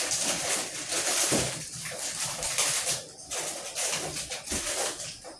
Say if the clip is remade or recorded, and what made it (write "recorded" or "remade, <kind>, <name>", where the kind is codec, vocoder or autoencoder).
recorded